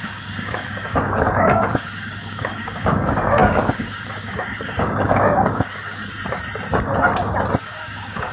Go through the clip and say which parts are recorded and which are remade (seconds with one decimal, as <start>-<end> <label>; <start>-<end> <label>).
0.0-6.0 remade; 6.0-7.6 recorded; 7.6-8.3 remade